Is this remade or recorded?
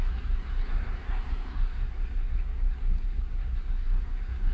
remade